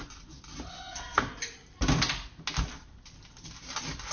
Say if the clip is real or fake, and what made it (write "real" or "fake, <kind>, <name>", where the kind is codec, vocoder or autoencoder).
real